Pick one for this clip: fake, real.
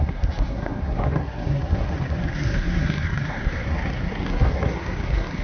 fake